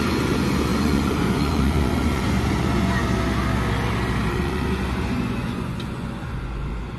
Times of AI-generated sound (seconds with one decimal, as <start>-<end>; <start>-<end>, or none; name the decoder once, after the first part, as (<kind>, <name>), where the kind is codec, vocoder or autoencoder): 0.0-3.0 (vocoder, Vocos); 4.3-7.0